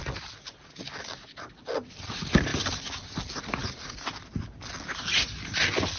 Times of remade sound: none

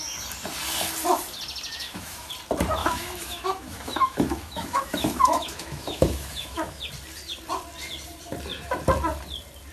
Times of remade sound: 1.7-2.3 (autoencoder, DAC-VAE); 2.8-6.8

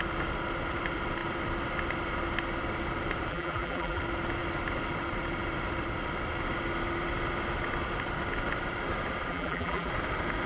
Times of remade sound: 3.3-4.0 (vocoder, BigVGAN v2); 9.3-9.9

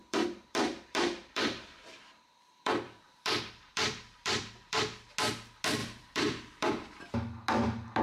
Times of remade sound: 0.0-4.8 (vocoder, BigVGAN v2); 5.8-6.7